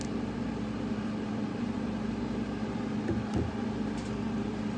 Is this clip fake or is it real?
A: real